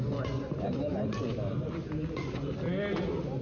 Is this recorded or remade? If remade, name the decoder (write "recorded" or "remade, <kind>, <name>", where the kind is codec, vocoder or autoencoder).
recorded